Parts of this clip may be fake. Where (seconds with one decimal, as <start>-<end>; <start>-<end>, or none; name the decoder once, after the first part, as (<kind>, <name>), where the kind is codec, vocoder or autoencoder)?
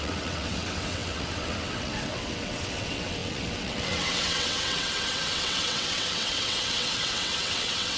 0.0-8.0 (vocoder, WaveNeXt)